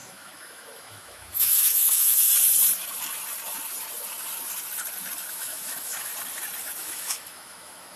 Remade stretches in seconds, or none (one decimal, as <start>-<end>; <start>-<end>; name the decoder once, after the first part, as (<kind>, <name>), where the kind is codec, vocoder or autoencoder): 0.0-2.3 (autoencoder, DAC-VAE); 5.3-6.1; 6.8-8.0

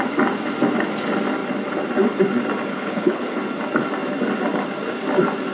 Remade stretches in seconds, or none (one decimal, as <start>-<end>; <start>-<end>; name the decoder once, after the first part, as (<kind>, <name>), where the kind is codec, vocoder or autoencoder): 2.7-3.4 (codec, HILCodec)

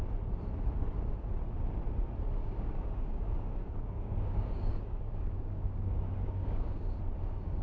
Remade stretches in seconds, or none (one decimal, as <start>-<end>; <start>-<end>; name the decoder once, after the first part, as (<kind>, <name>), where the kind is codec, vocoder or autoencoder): 2.4-7.0 (codec, DAC)